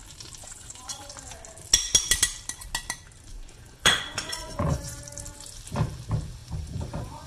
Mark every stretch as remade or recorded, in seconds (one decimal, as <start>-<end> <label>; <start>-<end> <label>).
0.0-0.4 recorded; 0.4-1.1 remade; 1.1-3.3 recorded; 3.3-5.0 remade; 5.0-6.4 recorded; 6.4-7.3 remade